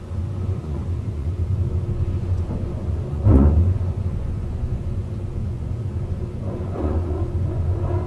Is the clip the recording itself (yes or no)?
no